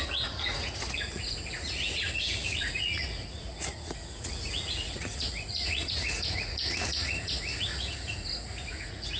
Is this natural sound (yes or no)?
no